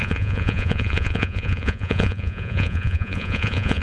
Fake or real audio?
fake